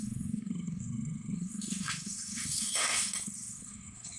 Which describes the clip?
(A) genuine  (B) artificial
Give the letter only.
B